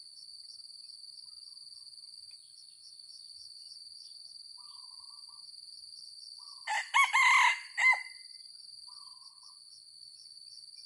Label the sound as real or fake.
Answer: real